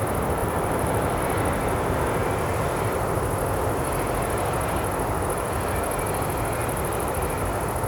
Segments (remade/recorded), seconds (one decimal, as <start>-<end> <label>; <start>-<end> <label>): 0.0-0.4 recorded; 0.4-1.2 remade; 1.2-6.6 recorded; 6.6-7.1 remade; 7.1-7.9 recorded